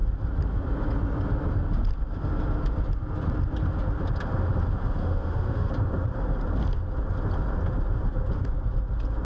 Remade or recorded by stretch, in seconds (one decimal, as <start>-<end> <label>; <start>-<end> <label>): 0.0-5.0 recorded; 5.0-5.7 remade; 5.7-9.2 recorded